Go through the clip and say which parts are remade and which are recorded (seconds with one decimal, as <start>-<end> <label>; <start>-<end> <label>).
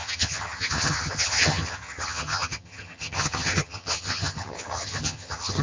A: 0.0-5.6 remade